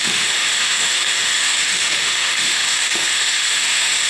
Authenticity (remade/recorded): remade